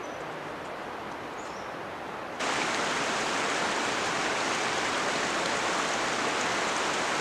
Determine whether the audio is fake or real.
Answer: real